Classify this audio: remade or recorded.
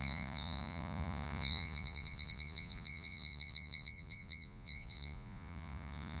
remade